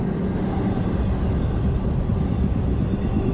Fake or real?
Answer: real